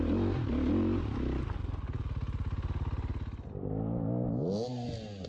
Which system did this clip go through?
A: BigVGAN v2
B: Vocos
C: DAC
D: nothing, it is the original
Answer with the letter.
D